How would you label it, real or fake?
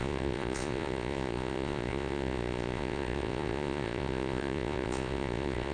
fake